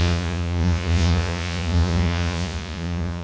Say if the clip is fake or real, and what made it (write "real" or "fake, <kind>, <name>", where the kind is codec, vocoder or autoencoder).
fake, vocoder, Vocos